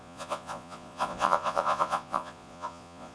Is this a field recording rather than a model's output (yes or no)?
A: no